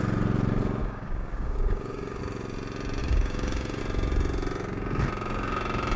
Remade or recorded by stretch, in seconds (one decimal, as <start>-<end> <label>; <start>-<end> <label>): 0.0-0.8 recorded; 0.8-2.2 remade; 2.2-3.0 recorded; 3.0-3.8 remade; 3.8-6.0 recorded